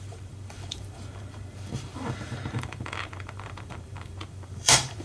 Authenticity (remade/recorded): remade